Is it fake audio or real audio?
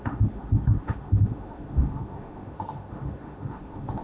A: fake